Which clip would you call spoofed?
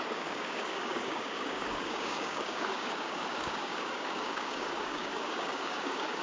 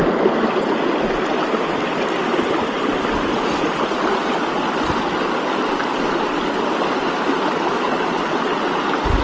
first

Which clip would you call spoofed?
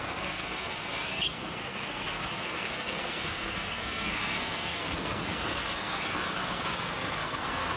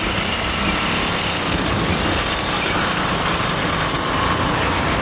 first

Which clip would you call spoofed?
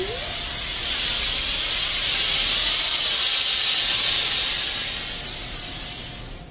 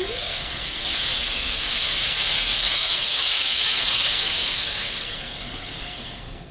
second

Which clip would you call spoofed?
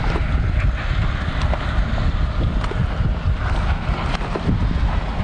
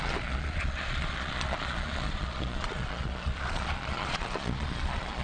second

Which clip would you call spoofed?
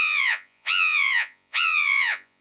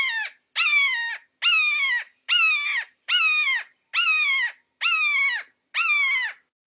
first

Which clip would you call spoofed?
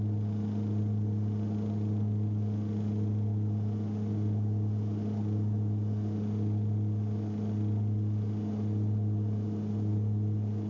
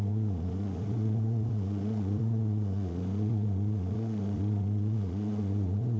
second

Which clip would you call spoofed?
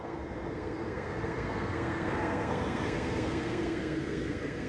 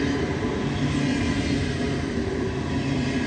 first